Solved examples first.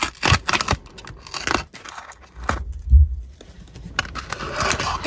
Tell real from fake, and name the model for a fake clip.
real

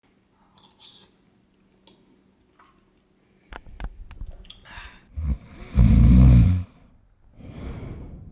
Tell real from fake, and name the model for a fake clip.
real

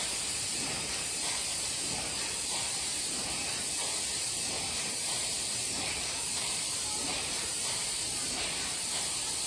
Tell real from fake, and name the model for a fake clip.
fake, vocoder, BigVGAN v2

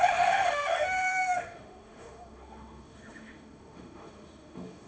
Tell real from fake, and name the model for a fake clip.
fake, autoencoder, DAC-VAE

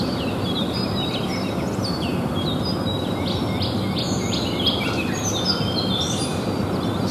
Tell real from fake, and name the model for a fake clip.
real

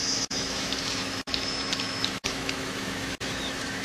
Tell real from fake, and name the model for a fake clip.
fake, autoencoder, DAC-VAE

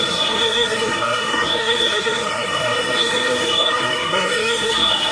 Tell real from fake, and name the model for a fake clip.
fake, codec, SNAC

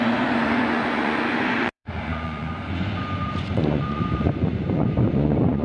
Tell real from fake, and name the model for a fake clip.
fake, vocoder, Vocos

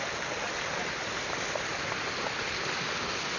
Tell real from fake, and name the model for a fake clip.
real